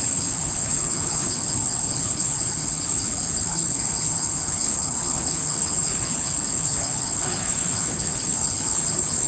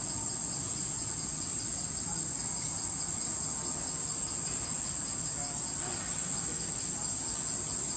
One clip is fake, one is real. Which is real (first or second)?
second